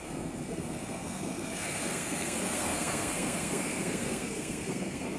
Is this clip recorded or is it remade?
remade